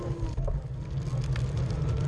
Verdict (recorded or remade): recorded